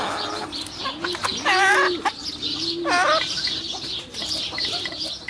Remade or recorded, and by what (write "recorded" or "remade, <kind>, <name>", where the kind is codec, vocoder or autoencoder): recorded